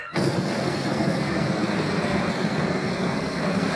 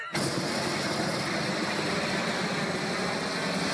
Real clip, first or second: second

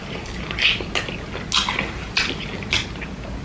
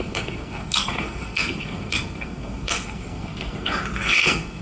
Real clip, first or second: first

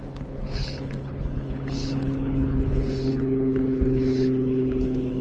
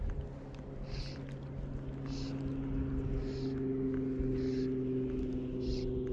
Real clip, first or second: second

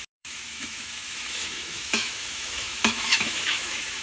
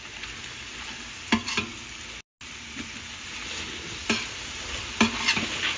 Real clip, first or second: second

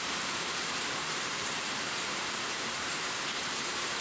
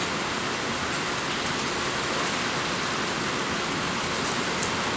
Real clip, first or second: second